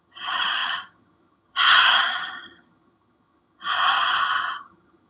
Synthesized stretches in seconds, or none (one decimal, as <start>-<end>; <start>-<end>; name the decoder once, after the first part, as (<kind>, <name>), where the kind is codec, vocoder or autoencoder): 0.0-5.1 (vocoder, HiFi-GAN)